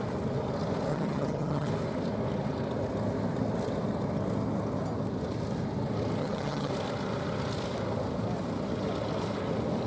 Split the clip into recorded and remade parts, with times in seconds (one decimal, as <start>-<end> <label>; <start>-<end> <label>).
0.0-0.9 recorded; 0.9-1.7 remade; 1.7-6.2 recorded; 6.2-6.7 remade; 6.7-9.9 recorded